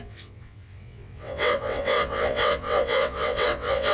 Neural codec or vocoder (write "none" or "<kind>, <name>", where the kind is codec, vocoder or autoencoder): vocoder, WaveNeXt